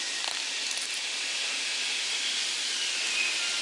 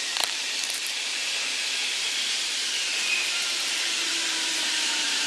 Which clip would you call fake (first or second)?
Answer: second